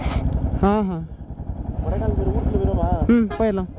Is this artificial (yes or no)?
no